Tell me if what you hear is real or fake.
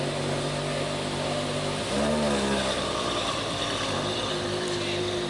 real